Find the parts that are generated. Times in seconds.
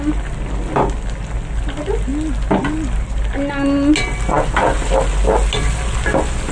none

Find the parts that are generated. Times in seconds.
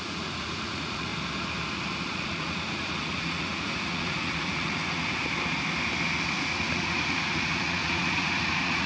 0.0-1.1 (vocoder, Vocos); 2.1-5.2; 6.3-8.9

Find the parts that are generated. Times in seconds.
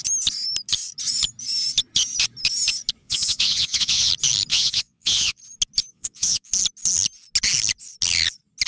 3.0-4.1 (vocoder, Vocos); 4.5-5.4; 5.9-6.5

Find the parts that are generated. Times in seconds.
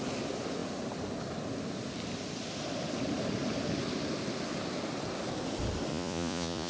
5.9-6.7 (vocoder, Vocos)